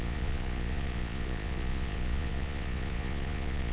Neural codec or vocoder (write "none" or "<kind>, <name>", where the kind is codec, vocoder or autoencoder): vocoder, Vocos